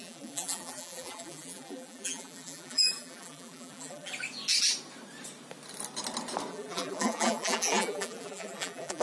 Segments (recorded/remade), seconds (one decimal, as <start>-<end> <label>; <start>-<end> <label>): 0.0-4.1 remade; 4.1-6.5 recorded; 6.5-9.0 remade

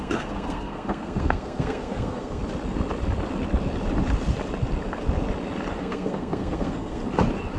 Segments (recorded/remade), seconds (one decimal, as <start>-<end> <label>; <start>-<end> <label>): 0.0-2.4 remade; 2.4-5.8 recorded; 5.8-7.0 remade; 7.0-7.6 recorded

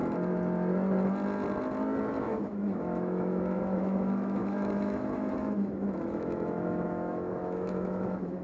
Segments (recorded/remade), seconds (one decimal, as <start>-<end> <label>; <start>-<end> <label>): 0.0-2.2 recorded; 2.2-8.4 remade

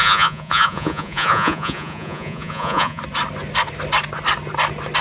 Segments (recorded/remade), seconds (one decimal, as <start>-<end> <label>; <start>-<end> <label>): 0.0-3.0 remade; 3.0-5.0 recorded

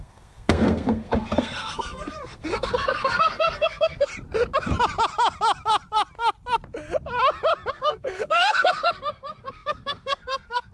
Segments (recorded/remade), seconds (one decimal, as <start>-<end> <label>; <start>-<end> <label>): 0.0-4.1 remade; 4.1-7.7 recorded; 7.7-10.7 remade

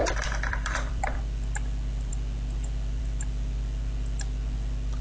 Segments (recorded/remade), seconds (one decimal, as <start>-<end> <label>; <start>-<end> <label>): 0.0-1.2 remade; 1.2-5.0 recorded

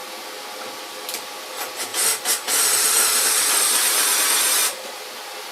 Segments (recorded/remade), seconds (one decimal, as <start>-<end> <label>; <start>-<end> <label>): 0.0-5.5 recorded